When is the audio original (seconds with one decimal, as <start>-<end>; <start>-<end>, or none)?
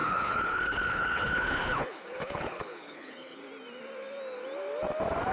3.4-5.3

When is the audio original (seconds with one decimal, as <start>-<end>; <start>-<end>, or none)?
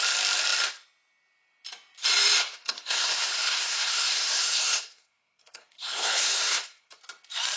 0.0-2.4; 7.0-7.6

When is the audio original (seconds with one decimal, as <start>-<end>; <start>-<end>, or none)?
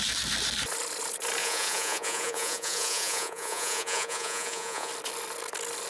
0.0-1.4; 4.9-5.9